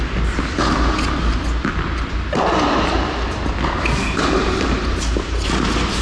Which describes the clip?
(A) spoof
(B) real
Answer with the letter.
B